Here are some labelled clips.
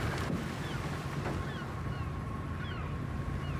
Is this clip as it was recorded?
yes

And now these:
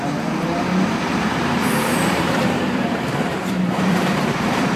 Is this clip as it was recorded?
no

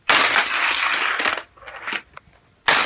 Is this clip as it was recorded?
yes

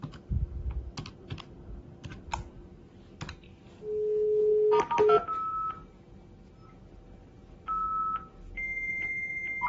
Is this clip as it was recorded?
yes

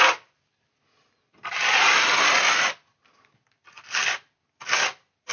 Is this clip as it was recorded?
yes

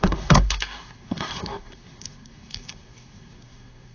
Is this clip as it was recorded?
no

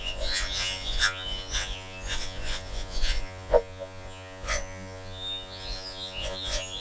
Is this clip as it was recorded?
no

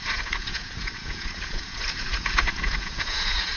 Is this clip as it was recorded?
no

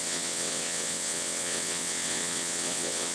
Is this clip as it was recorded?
no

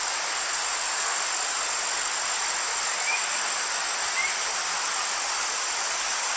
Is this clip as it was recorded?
yes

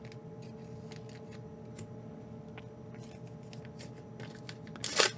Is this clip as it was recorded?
yes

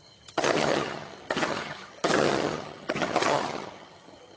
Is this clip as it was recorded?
no